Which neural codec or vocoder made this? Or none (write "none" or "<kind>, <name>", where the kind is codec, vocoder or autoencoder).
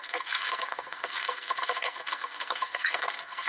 codec, SNAC